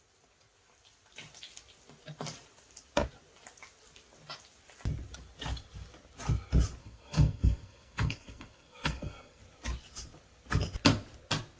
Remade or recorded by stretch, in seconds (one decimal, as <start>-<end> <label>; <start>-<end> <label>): 0.0-6.8 recorded; 6.8-9.4 remade; 9.4-11.6 recorded